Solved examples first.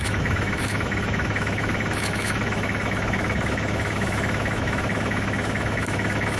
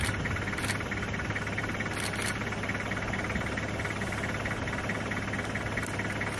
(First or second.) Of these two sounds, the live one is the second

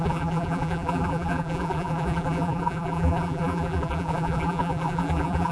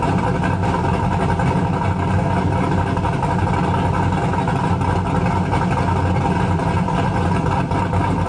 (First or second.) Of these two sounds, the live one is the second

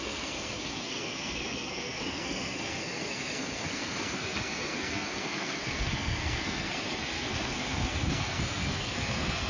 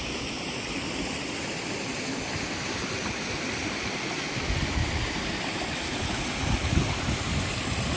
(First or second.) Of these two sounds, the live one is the second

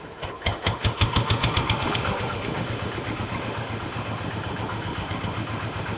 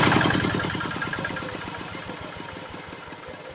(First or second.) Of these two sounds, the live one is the second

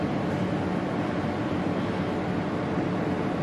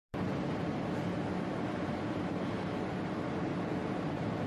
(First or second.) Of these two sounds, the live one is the first